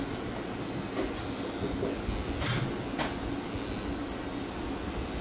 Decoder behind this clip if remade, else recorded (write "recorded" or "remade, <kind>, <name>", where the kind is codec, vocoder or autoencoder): recorded